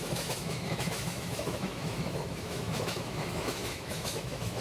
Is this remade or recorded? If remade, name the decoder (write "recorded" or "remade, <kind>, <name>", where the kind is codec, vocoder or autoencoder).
remade, autoencoder, DAC-VAE